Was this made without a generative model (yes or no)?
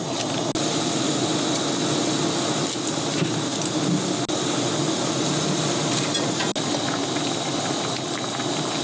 yes